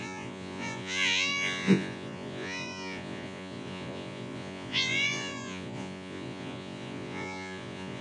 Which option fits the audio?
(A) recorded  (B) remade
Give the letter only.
B